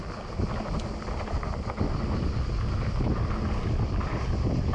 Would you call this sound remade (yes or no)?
no